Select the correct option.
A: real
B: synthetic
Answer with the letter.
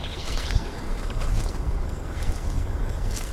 B